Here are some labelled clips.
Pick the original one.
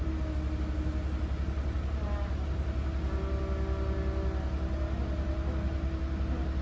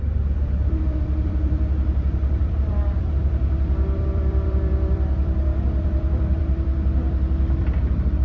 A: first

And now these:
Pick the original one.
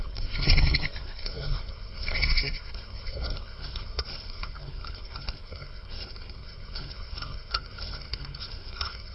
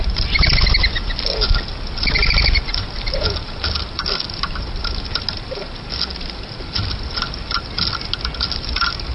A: second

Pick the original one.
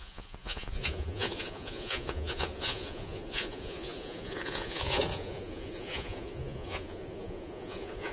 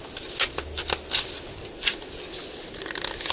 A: second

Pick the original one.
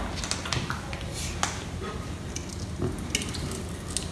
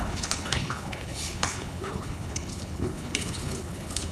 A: first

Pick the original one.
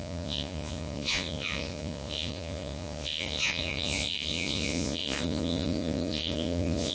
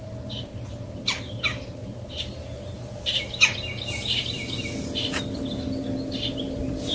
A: second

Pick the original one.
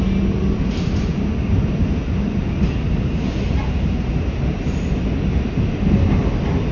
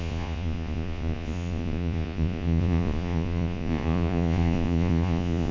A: first